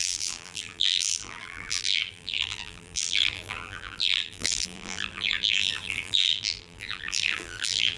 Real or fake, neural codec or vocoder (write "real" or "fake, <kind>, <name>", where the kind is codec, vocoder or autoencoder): fake, vocoder, BigVGAN v2